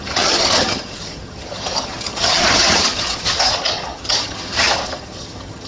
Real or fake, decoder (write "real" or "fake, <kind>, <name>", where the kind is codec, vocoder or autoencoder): fake, vocoder, HiFi-GAN